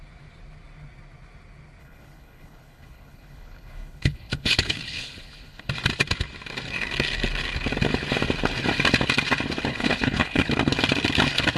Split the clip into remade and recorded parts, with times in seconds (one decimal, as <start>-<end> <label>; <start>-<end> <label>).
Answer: 0.0-1.8 recorded; 1.8-5.7 remade; 5.7-9.7 recorded; 9.7-10.5 remade; 10.5-11.6 recorded